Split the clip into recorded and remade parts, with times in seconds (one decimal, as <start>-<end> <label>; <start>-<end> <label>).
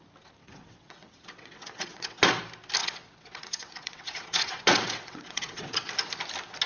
0.0-0.4 recorded; 0.4-2.4 remade; 2.4-2.8 recorded; 2.8-5.9 remade; 5.9-6.7 recorded